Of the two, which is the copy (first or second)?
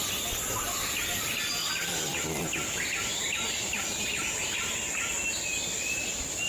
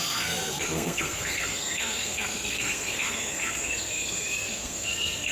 second